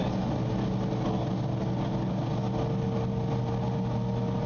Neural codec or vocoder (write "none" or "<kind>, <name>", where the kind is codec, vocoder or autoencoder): none